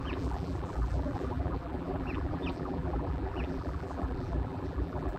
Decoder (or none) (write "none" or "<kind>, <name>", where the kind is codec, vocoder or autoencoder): vocoder, BigVGAN v2